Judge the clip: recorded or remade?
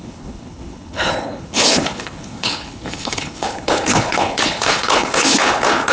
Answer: remade